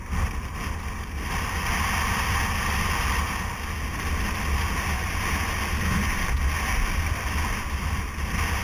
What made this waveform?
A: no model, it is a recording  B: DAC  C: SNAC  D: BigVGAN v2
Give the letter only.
A